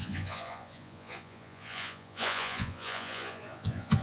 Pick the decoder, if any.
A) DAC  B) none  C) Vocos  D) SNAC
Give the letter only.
C